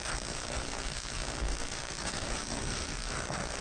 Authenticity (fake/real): fake